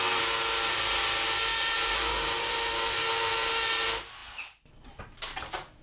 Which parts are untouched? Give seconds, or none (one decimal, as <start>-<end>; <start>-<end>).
0.0-1.5; 3.5-4.2; 5.0-5.8